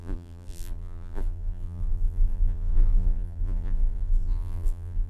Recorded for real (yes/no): no